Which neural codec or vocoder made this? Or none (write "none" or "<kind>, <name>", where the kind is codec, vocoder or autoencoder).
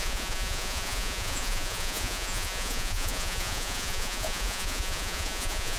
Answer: vocoder, Vocos